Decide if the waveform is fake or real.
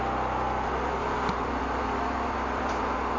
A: real